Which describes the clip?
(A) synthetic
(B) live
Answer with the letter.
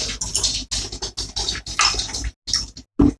B